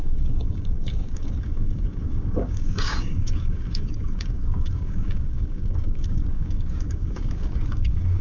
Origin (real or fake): fake